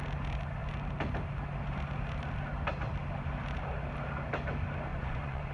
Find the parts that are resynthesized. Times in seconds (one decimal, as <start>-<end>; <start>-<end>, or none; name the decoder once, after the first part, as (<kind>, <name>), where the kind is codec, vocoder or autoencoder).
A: 4.9-5.5 (vocoder, Vocos)